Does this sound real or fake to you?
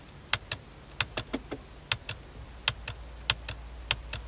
real